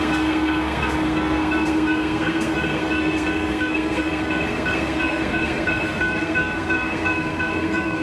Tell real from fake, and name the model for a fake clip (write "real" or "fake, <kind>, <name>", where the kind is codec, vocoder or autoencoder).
fake, codec, SNAC